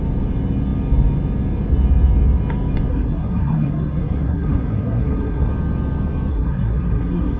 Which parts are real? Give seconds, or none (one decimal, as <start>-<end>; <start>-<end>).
0.0-2.9; 5.5-6.3